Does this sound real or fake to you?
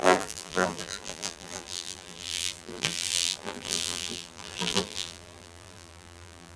fake